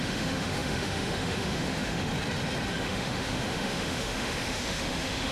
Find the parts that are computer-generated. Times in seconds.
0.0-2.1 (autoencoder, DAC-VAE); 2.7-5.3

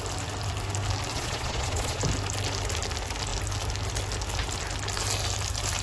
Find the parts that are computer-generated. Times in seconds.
1.1-2.0 (vocoder, Vocos)

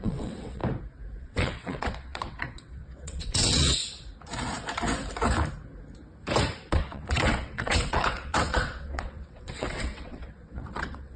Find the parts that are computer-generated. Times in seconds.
0.0-0.6 (vocoder, WaveNeXt); 1.2-3.8; 6.7-11.2

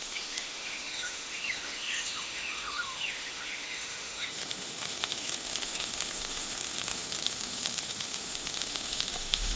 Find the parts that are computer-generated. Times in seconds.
0.0-9.6 (autoencoder, DAC-VAE)